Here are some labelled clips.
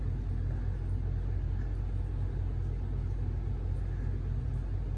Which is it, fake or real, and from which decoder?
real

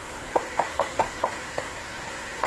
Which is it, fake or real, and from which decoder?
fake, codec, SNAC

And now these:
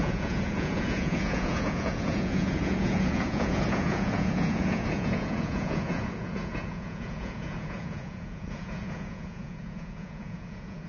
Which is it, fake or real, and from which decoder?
fake, vocoder, Vocos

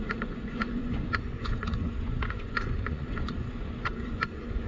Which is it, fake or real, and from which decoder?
fake, vocoder, Vocos